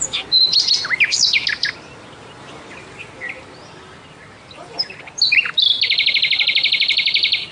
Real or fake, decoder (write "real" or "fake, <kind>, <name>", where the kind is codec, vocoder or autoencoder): real